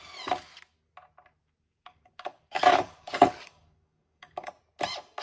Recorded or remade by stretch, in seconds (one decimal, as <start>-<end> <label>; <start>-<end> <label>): 0.0-1.4 recorded; 1.4-4.5 remade; 4.5-5.2 recorded

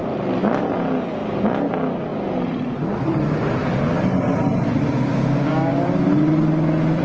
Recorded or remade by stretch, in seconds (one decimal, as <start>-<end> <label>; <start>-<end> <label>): 0.0-5.1 recorded; 5.1-5.7 remade; 5.7-7.0 recorded

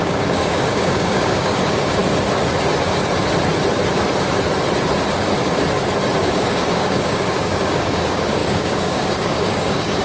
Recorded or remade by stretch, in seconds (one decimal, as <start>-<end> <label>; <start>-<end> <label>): 0.0-2.0 remade; 2.0-6.2 recorded; 6.2-10.0 remade

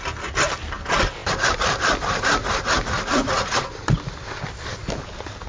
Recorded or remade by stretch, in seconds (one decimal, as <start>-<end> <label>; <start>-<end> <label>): 0.0-5.5 recorded

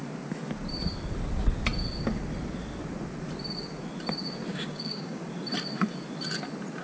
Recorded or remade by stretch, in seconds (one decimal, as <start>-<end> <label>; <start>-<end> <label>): 0.0-4.5 recorded; 4.5-5.2 remade; 5.2-6.8 recorded